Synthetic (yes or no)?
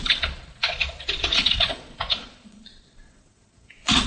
yes